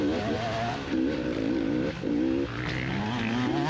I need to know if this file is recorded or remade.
recorded